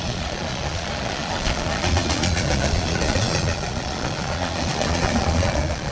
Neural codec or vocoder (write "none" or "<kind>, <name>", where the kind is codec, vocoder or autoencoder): vocoder, Vocos